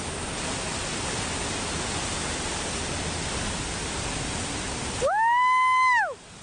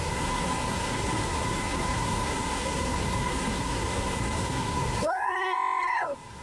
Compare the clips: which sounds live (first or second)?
first